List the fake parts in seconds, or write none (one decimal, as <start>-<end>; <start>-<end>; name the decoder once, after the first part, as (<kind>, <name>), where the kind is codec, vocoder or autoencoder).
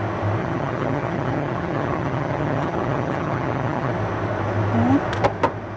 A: 0.4-3.9 (vocoder, HiFi-GAN)